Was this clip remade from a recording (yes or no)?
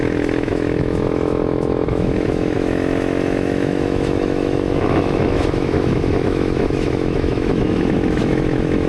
yes